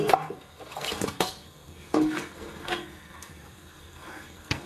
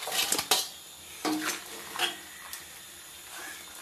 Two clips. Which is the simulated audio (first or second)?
first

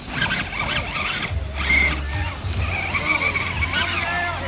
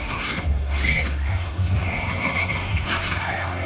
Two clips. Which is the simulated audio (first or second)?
second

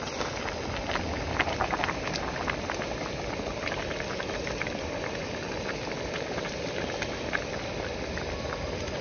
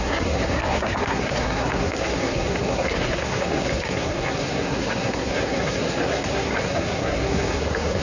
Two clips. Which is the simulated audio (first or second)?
second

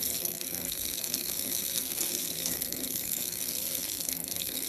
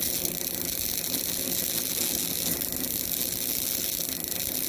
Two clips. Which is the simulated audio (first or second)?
first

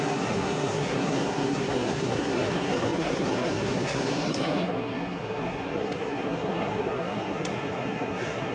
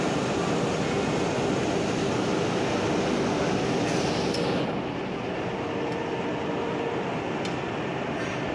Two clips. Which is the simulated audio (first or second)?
first